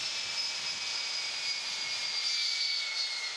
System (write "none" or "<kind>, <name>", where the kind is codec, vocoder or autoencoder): none